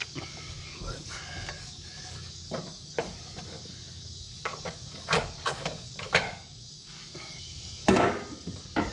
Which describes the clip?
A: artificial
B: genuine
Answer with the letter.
A